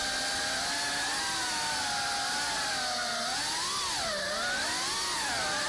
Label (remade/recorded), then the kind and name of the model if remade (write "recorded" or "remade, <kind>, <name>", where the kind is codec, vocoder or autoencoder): recorded